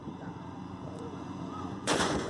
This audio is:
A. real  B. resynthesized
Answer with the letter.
B